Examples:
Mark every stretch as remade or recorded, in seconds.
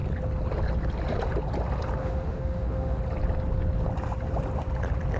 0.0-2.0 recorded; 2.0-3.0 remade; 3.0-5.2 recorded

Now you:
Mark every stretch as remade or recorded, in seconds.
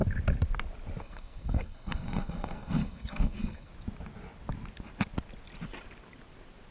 0.0-1.0 recorded; 1.0-3.7 remade; 3.7-6.7 recorded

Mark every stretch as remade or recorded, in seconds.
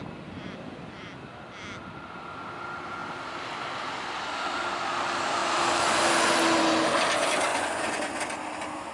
0.0-7.5 recorded; 7.5-8.2 remade; 8.2-8.9 recorded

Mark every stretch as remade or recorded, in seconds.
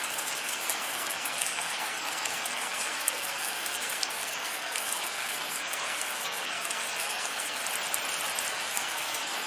0.0-7.6 remade; 7.6-8.5 recorded; 8.5-9.5 remade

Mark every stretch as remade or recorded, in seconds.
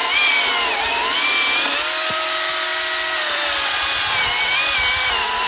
0.0-5.5 recorded